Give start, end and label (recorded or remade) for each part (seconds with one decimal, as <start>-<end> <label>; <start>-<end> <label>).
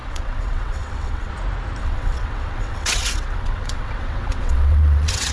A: 0.0-1.3 remade; 1.3-1.8 recorded; 1.8-5.3 remade